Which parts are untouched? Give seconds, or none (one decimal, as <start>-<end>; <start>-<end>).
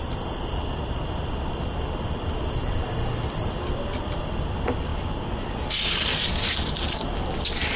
0.0-7.8